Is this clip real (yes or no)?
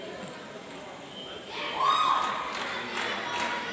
yes